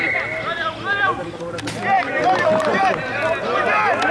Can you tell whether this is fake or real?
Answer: real